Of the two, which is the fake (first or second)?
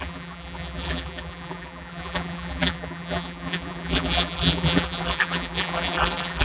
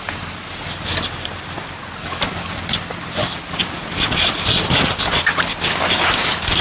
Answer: first